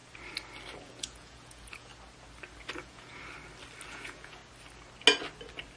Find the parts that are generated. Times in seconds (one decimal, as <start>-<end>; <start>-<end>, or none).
0.8-1.9; 2.8-3.2; 3.9-4.4